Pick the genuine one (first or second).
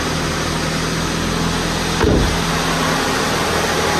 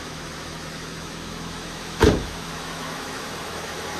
first